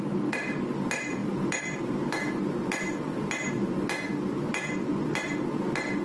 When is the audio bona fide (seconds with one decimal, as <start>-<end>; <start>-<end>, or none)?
0.0-6.0